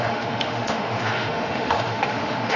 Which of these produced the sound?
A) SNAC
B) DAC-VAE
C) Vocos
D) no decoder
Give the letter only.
B